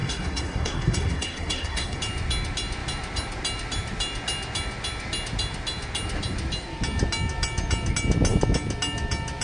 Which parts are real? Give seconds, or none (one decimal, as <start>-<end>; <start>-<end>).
2.0-9.4